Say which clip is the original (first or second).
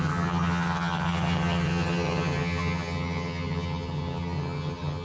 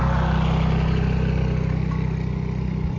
second